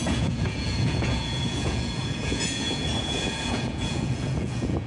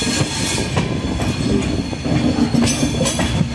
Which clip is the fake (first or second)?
first